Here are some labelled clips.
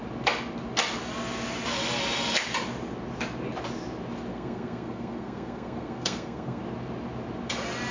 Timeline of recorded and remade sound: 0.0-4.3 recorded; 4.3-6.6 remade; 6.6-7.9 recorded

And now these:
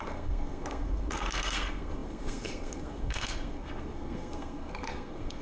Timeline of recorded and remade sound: 0.0-5.4 remade

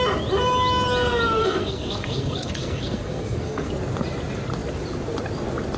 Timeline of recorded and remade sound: 0.0-1.4 recorded; 1.4-3.7 remade; 3.7-5.8 recorded

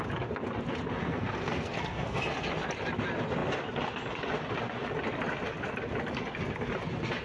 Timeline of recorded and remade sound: 0.0-1.0 recorded; 1.0-2.2 remade; 2.2-7.2 recorded